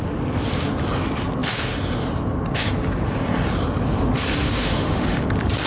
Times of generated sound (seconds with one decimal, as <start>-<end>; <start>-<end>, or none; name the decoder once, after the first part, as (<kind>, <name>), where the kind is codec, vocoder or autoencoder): 4.4-5.2 (autoencoder, DAC-VAE)